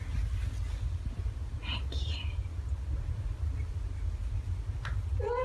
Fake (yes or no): no